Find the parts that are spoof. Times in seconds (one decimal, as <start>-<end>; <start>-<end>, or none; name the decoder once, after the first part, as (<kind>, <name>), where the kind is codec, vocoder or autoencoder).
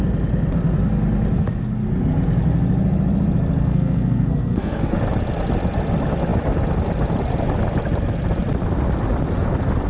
3.6-5.0 (codec, SNAC)